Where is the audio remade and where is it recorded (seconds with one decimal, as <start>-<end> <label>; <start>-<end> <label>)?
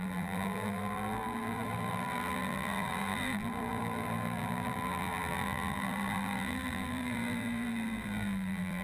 0.0-8.8 remade